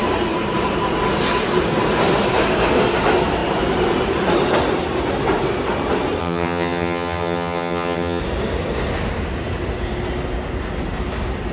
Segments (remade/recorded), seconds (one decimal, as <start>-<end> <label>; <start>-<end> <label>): 0.0-6.2 recorded; 6.2-8.2 remade; 8.2-11.5 recorded